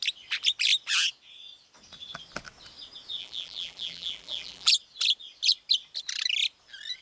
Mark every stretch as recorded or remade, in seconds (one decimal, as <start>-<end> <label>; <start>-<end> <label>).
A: 0.0-3.2 recorded; 3.2-4.7 remade; 4.7-7.0 recorded

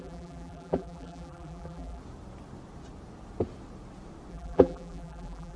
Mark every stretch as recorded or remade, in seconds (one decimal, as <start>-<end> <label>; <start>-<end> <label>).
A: 0.0-2.0 remade; 2.0-4.3 recorded; 4.3-5.6 remade

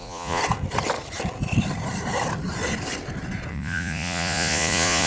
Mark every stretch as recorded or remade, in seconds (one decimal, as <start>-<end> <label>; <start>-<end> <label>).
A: 0.0-0.4 remade; 0.4-3.5 recorded; 3.5-5.1 remade

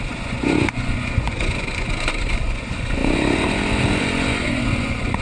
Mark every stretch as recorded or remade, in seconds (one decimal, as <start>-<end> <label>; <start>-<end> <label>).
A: 0.0-5.2 remade

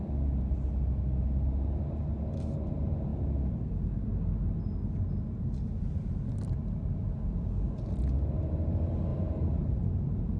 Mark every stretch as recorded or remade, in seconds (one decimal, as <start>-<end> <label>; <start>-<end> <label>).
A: 0.0-9.1 recorded; 9.1-9.7 remade; 9.7-10.4 recorded

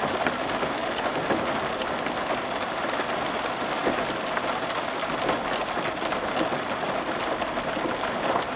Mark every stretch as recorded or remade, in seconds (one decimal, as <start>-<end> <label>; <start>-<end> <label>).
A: 0.0-8.6 recorded

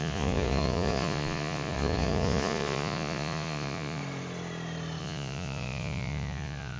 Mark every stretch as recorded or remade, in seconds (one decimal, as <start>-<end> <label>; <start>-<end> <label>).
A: 0.0-4.0 remade; 4.0-5.0 recorded; 5.0-6.8 remade

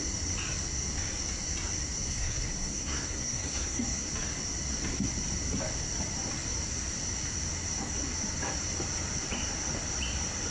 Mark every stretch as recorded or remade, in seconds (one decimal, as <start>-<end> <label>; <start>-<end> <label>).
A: 0.0-2.1 recorded; 2.1-4.1 remade; 4.1-10.5 recorded